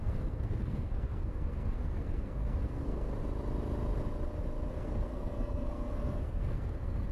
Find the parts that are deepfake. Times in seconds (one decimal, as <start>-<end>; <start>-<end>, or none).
0.0-3.1; 4.7-7.1